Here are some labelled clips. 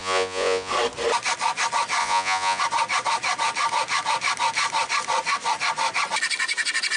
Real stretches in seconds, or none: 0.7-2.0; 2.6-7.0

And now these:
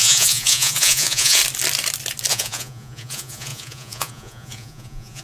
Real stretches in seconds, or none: 1.4-2.3

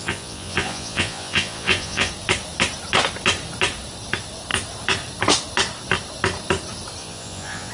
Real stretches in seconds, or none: 2.1-7.0

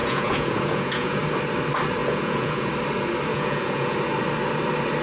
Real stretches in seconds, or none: 1.2-2.0; 2.7-3.3; 4.0-5.0

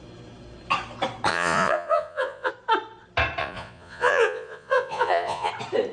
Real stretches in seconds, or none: 0.0-1.3; 2.5-3.4; 5.5-5.9

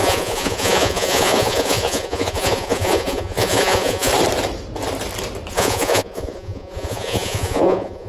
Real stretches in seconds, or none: 4.1-5.5